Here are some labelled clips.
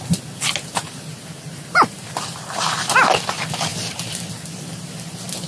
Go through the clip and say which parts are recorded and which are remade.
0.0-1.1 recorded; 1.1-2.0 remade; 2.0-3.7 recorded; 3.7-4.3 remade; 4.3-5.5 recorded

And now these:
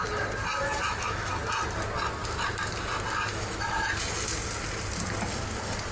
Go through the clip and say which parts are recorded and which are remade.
0.0-0.6 recorded; 0.6-1.3 remade; 1.3-3.3 recorded; 3.3-3.9 remade; 3.9-5.9 recorded

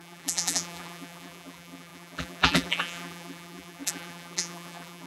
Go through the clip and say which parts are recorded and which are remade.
0.0-5.1 remade